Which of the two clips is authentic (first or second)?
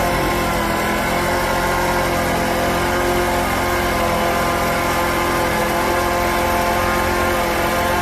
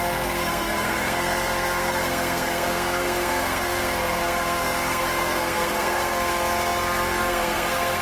first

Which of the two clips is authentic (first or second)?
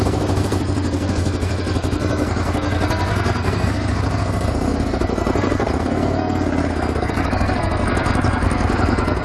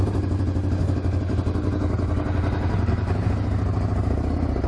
second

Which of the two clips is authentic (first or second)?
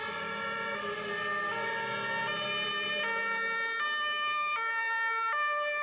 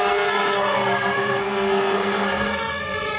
first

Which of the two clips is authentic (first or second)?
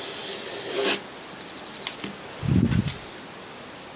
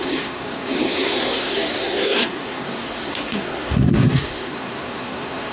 first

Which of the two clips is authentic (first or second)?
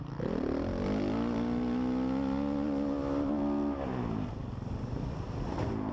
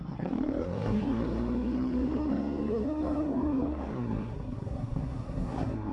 first